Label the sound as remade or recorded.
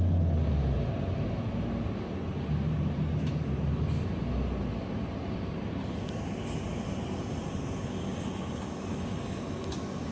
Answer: recorded